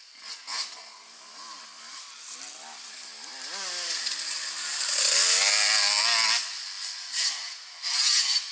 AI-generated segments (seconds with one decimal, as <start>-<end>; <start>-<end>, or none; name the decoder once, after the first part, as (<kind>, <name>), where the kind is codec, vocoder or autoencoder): 1.9-2.4 (vocoder, BigVGAN v2)